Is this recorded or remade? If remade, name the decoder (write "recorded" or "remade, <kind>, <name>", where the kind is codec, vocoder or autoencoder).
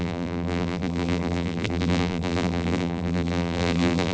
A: remade, vocoder, BigVGAN v2